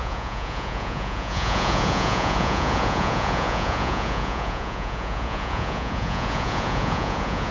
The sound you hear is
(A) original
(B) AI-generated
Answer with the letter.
B